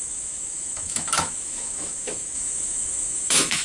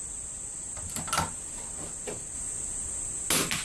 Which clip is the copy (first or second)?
first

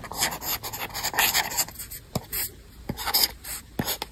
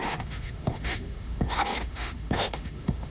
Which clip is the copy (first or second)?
second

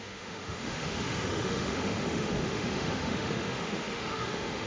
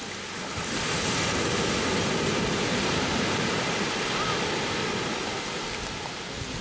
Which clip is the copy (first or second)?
first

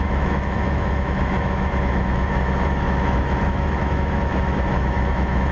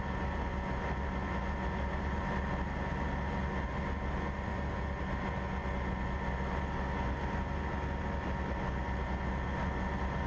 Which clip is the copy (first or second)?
first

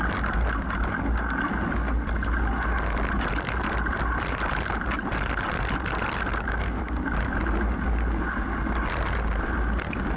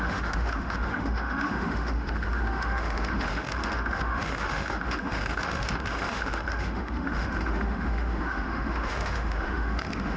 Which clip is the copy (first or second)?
second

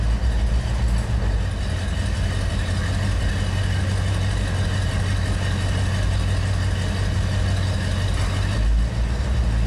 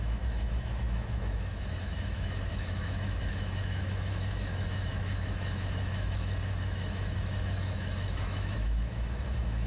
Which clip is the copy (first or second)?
second